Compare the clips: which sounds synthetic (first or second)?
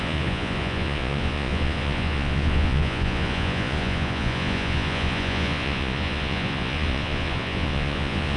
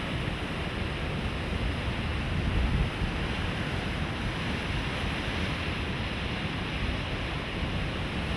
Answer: first